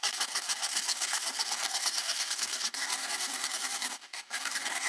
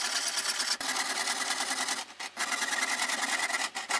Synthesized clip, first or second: first